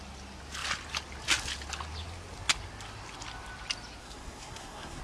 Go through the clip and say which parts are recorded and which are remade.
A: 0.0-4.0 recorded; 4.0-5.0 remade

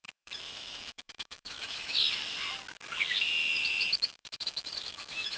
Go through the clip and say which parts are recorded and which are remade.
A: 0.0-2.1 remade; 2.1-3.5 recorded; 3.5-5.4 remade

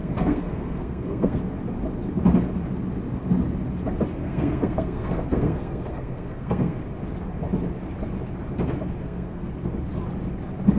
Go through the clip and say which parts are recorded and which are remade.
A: 0.0-1.4 remade; 1.4-4.2 recorded; 4.2-6.8 remade; 6.8-9.0 recorded; 9.0-9.5 remade; 9.5-10.8 recorded